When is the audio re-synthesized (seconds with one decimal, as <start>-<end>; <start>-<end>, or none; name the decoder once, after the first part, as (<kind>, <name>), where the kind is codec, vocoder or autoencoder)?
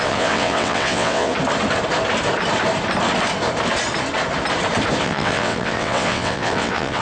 0.0-1.3 (vocoder, WaveNeXt); 5.0-7.0